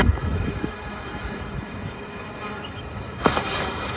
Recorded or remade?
remade